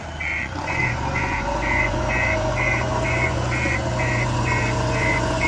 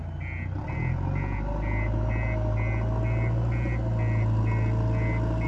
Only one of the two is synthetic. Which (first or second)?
first